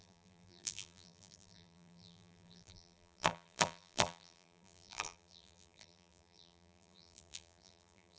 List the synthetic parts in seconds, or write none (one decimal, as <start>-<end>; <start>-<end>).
0.0-8.2

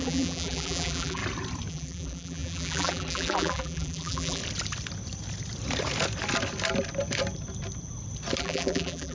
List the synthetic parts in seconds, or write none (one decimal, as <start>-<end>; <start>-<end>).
0.0-1.2; 1.7-4.4; 8.4-9.1